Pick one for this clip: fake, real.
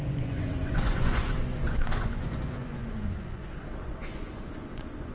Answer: fake